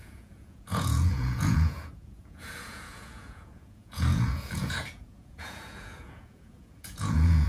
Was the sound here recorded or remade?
remade